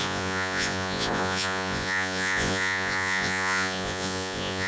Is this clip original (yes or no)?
no